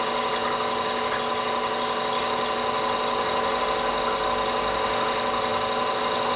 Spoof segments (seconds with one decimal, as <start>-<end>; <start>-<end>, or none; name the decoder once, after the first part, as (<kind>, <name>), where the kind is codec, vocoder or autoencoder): none